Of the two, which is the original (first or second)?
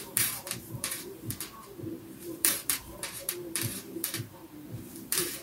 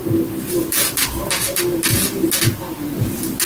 second